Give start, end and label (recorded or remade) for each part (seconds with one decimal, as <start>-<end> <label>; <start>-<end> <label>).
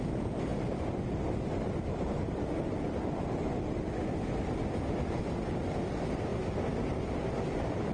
0.0-7.9 recorded